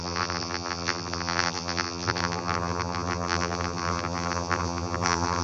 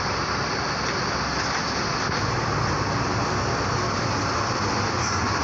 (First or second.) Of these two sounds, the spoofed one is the first